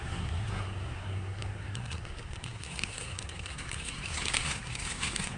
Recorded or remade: remade